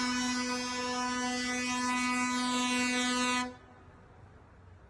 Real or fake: real